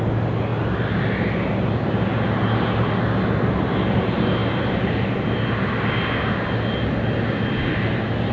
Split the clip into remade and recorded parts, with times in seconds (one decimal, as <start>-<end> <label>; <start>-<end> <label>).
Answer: 0.0-8.3 recorded